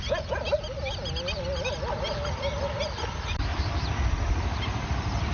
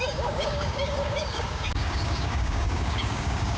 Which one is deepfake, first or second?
second